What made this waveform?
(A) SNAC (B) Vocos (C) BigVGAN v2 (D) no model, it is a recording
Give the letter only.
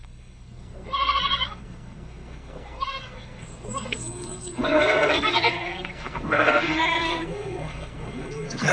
A